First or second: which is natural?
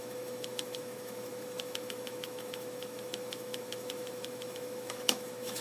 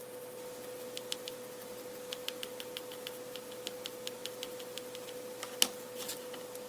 second